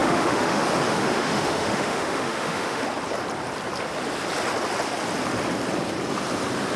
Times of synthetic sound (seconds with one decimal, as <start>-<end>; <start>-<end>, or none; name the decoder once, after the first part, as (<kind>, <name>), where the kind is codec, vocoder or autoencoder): 0.0-0.6 (autoencoder, DAC-VAE); 1.0-2.8